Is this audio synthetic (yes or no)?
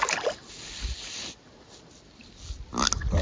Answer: no